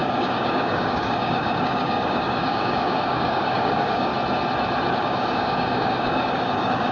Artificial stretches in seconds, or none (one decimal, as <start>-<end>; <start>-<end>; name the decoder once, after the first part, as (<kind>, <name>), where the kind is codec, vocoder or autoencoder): 0.0-4.1 (codec, DAC); 5.0-6.9